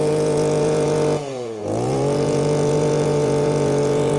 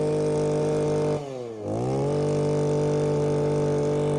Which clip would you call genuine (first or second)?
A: second